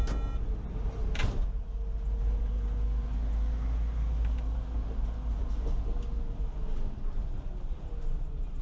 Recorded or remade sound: recorded